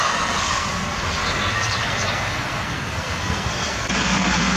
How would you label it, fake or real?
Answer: fake